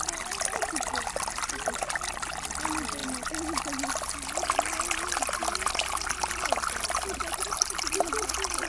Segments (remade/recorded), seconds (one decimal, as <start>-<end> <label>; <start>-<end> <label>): 0.0-8.7 recorded